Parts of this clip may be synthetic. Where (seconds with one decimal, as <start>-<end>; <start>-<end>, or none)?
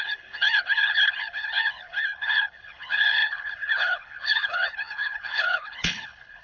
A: 0.0-6.4